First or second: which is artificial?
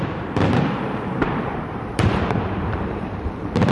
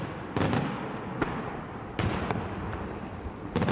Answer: first